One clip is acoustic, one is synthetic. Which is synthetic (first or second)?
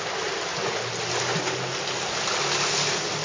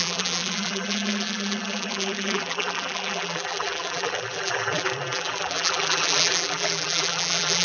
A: second